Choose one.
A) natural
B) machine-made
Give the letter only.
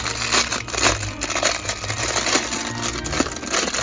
A